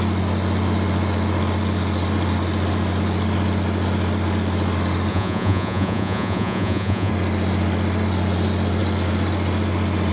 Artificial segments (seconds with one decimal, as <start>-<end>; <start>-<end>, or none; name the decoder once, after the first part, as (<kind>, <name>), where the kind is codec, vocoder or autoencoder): 5.1-7.1 (vocoder, Vocos)